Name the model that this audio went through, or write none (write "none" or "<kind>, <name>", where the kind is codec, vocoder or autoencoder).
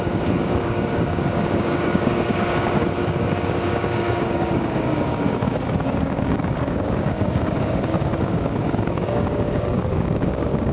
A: codec, DAC